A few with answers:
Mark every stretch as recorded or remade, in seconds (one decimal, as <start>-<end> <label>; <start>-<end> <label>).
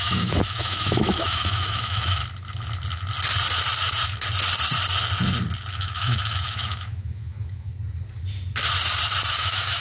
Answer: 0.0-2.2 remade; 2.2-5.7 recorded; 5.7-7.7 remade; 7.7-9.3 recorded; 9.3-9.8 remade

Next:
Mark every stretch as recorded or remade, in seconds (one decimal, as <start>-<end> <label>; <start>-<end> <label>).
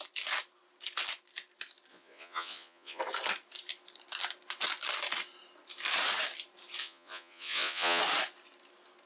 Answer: 0.0-1.9 recorded; 1.9-3.0 remade; 3.0-6.8 recorded; 6.8-8.0 remade; 8.0-9.1 recorded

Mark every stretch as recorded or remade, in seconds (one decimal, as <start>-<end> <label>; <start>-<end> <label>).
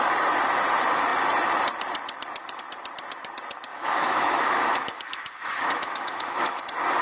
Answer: 0.0-3.7 recorded; 3.7-6.6 remade; 6.6-7.0 recorded